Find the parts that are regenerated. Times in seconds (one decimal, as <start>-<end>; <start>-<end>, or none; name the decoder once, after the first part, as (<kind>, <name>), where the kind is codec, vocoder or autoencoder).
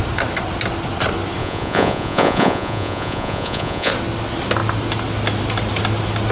1.4-3.9 (vocoder, Vocos)